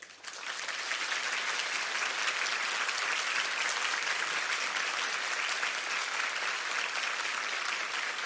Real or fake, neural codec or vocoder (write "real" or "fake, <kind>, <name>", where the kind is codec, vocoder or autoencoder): real